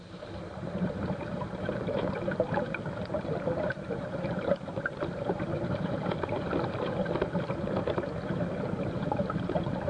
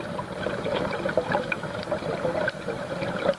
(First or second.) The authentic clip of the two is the second